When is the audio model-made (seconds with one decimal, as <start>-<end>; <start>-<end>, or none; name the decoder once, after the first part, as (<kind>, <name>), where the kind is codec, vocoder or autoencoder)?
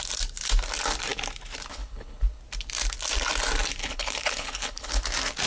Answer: 1.7-2.4 (codec, HILCodec); 3.8-5.0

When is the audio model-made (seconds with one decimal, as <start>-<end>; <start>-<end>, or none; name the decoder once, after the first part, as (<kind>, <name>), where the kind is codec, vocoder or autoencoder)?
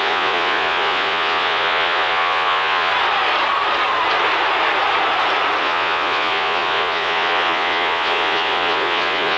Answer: 0.0-2.9 (vocoder, Vocos); 5.6-9.4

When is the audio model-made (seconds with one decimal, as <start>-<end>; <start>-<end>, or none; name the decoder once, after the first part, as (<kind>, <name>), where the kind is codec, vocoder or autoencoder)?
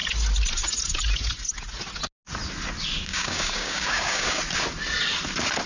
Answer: 3.1-4.4 (codec, DAC)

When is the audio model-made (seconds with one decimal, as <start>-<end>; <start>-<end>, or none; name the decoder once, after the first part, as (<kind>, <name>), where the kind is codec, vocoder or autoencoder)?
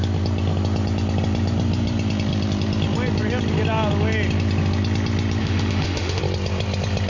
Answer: 5.4-6.2 (autoencoder, DAC-VAE)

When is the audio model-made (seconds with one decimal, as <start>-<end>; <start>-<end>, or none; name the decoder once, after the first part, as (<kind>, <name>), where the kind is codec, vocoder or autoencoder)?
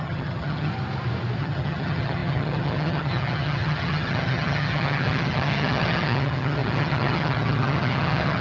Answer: 0.0-0.7 (vocoder, HiFi-GAN); 1.4-8.4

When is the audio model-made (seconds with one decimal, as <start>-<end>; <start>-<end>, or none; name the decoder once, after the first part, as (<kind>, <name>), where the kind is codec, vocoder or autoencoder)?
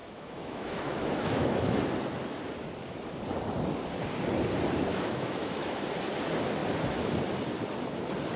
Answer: 0.0-1.7 (autoencoder, DAC-VAE); 4.9-5.8